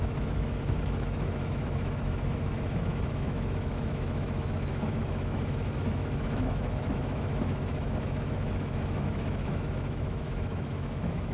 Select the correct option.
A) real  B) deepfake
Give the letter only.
B